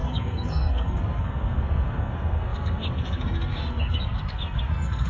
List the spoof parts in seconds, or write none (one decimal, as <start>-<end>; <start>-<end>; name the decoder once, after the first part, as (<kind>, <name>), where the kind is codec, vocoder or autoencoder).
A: 0.0-5.1 (codec, SNAC)